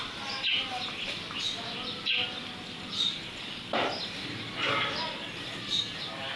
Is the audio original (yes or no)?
yes